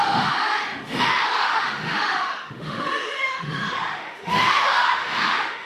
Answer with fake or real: fake